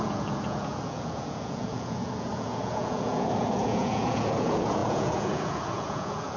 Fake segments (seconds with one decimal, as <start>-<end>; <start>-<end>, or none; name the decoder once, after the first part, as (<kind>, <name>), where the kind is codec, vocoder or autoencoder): 0.0-6.4 (vocoder, Vocos)